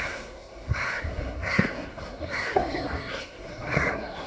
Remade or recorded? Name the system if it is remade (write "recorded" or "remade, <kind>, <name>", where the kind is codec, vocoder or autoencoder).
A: remade, codec, SNAC